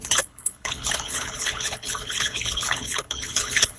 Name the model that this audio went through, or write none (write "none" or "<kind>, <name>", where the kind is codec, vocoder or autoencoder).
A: codec, HILCodec